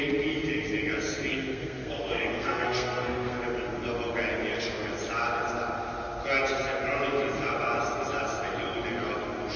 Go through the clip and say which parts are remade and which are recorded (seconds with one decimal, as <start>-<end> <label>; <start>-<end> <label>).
0.0-1.3 recorded; 1.3-3.4 remade; 3.4-9.6 recorded